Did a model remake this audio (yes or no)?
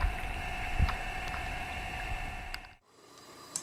yes